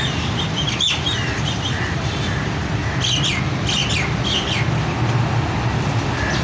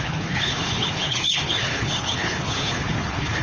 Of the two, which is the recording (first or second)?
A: first